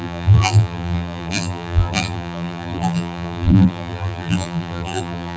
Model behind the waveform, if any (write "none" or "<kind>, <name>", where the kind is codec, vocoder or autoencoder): vocoder, BigVGAN v2